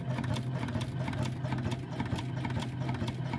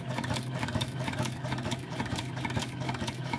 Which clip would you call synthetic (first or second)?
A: second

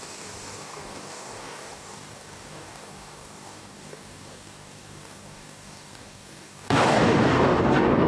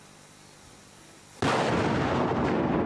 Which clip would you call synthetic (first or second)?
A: first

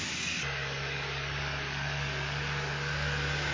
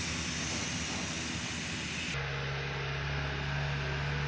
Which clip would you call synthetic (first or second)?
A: first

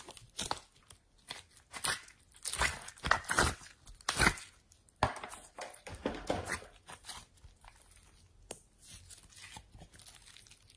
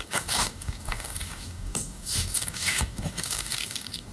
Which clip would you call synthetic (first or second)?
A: second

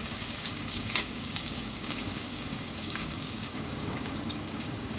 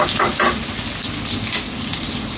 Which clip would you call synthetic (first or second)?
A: first